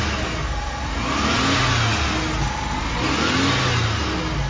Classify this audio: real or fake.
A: real